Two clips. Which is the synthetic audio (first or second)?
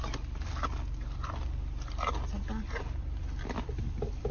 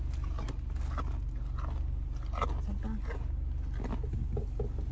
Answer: first